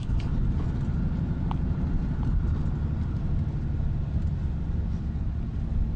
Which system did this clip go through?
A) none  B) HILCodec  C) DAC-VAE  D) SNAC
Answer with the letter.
A